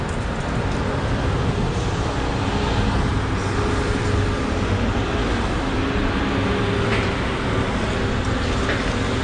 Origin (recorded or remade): recorded